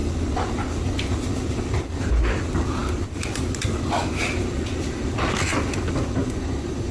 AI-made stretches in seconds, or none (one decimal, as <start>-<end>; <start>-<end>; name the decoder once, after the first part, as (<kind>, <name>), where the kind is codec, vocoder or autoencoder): 6.2-6.9 (vocoder, Vocos)